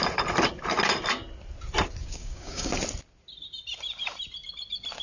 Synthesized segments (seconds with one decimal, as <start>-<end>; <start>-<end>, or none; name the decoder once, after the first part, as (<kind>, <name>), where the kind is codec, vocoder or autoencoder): 2.0-2.7 (codec, DAC)